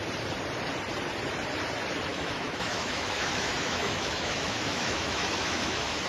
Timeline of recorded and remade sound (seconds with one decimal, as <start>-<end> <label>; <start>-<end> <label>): 0.0-2.1 recorded; 2.1-6.1 remade

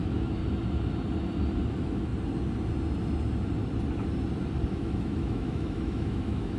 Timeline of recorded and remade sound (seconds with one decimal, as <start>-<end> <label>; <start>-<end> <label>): 0.0-0.4 remade; 0.4-1.7 recorded; 1.7-2.1 remade; 2.1-4.7 recorded; 4.7-6.6 remade